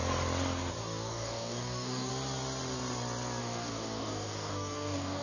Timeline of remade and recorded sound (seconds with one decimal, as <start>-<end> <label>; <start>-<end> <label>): 0.0-0.8 recorded; 0.8-2.1 remade; 2.1-3.4 recorded; 3.4-5.2 remade